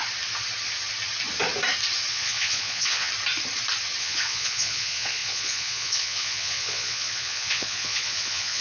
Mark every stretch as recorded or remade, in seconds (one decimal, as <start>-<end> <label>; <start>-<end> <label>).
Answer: 0.0-2.1 recorded; 2.1-3.1 remade; 3.1-4.0 recorded; 4.0-8.6 remade